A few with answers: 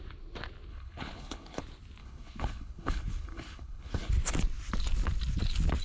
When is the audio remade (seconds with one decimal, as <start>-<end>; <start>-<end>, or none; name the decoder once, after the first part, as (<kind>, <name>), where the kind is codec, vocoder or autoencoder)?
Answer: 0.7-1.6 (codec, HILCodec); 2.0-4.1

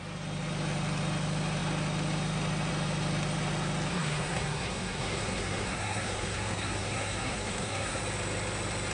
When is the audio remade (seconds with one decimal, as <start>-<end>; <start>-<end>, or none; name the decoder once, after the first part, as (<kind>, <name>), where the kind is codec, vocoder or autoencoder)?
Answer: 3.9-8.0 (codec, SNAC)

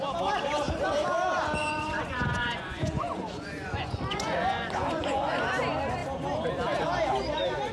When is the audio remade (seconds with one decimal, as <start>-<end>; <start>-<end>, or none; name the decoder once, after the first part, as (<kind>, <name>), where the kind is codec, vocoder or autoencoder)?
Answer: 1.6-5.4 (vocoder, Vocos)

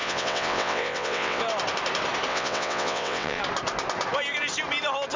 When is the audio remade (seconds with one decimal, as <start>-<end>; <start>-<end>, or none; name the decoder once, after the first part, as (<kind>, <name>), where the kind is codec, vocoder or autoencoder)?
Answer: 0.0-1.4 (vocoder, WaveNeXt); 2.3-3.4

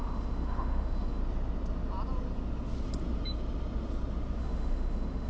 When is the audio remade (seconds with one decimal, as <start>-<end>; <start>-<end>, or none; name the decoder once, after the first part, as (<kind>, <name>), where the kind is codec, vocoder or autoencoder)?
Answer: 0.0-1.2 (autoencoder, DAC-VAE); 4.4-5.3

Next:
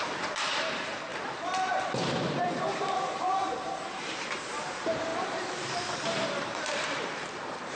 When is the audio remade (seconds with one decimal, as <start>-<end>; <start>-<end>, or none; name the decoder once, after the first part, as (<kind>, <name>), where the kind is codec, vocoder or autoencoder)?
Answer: 0.0-7.8 (vocoder, BigVGAN v2)